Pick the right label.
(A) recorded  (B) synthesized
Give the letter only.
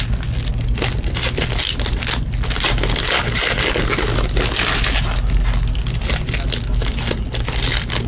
A